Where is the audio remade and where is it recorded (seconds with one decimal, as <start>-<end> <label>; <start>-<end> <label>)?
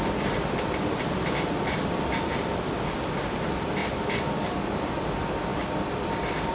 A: 0.0-6.5 recorded